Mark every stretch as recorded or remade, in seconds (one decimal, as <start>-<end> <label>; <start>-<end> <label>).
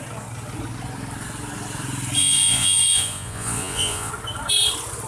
0.0-2.2 recorded; 2.2-4.1 remade; 4.1-5.1 recorded